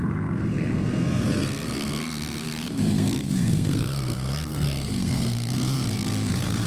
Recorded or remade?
remade